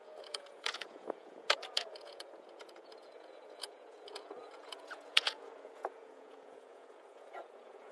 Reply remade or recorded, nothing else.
remade